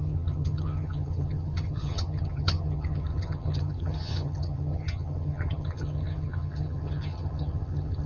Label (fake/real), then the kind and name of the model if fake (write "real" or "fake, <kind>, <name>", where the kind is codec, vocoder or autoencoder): fake, vocoder, HiFi-GAN